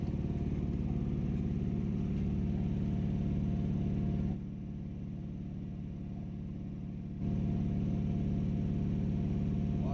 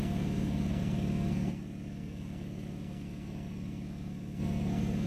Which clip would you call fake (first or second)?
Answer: second